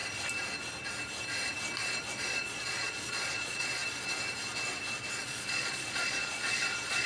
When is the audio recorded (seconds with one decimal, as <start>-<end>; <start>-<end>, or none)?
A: 0.0-2.1; 3.8-5.1